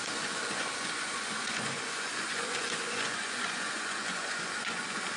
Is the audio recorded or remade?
remade